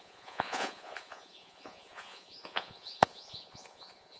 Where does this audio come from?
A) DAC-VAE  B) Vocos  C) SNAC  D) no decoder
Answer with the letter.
B